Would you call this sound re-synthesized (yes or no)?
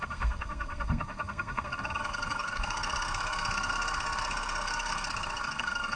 yes